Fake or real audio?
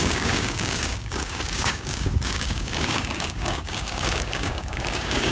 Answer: fake